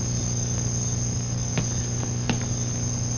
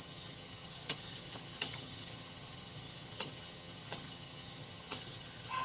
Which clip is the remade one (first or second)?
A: second